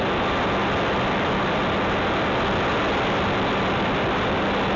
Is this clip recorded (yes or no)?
yes